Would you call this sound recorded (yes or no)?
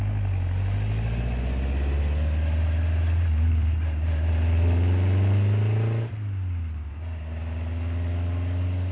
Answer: yes